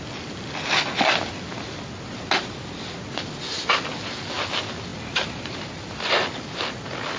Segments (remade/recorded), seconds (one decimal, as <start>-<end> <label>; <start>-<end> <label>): 0.0-7.2 recorded